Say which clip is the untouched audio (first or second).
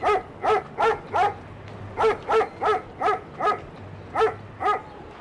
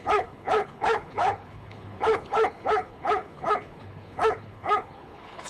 first